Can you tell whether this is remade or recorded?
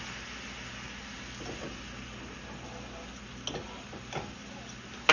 recorded